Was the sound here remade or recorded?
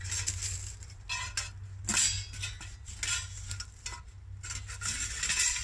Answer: recorded